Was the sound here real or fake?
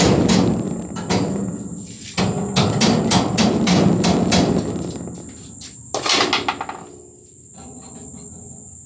real